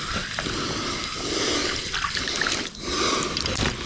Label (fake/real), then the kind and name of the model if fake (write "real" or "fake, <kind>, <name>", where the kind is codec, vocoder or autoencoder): real